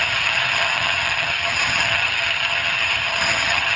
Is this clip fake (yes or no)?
yes